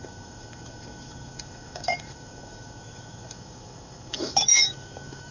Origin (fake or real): fake